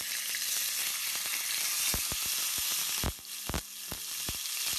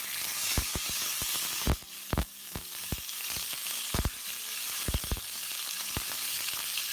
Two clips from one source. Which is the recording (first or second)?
first